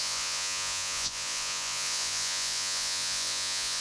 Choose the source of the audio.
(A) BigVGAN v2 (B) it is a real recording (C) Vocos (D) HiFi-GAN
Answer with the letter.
C